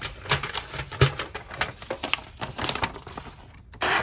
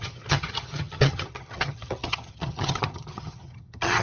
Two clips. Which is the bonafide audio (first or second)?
first